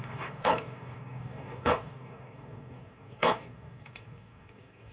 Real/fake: fake